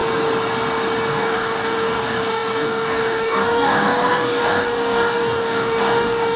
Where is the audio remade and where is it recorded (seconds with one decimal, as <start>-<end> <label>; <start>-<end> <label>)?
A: 0.0-1.1 recorded; 1.1-6.4 remade